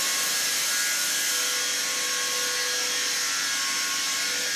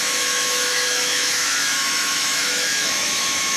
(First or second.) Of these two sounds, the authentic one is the first